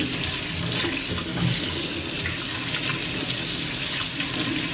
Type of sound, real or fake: real